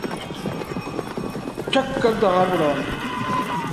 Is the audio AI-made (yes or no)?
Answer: no